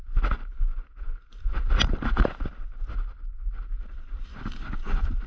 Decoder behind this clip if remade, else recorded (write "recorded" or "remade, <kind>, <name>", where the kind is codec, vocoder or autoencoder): recorded